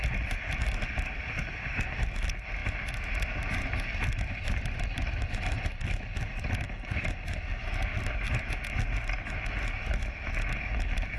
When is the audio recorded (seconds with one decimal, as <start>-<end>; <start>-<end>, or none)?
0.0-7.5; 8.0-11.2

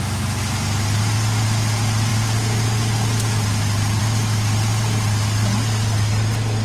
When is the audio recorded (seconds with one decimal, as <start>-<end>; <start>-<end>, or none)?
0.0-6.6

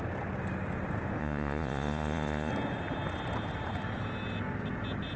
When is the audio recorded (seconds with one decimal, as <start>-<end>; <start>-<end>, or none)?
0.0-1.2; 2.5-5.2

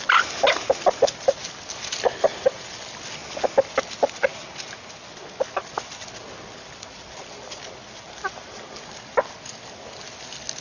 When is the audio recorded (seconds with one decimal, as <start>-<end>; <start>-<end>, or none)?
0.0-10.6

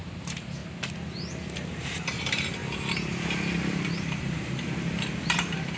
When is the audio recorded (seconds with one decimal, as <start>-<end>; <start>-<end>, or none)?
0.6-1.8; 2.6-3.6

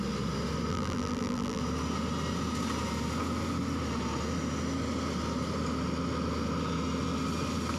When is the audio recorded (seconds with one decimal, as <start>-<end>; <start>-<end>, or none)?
0.0-0.7; 1.6-7.8

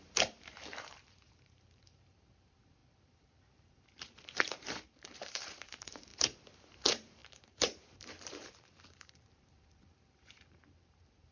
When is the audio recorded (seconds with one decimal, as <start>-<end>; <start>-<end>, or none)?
6.1-6.7

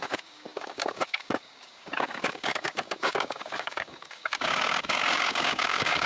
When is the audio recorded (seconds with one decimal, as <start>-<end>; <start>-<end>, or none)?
none